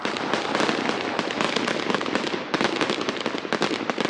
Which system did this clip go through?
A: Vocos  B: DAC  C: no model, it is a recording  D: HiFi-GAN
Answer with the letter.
C